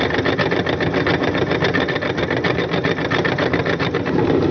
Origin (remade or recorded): recorded